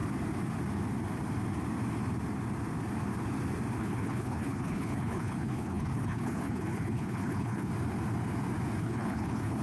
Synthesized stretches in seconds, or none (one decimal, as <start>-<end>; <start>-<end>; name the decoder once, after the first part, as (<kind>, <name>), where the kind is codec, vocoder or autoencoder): 3.8-7.7 (codec, HILCodec); 8.8-9.6